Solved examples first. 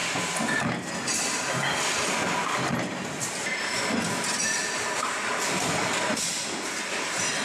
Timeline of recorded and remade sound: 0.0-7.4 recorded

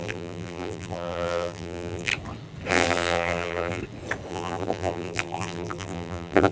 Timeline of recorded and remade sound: 0.0-2.1 remade; 2.1-2.7 recorded; 2.7-3.8 remade; 3.8-4.3 recorded; 4.3-6.5 remade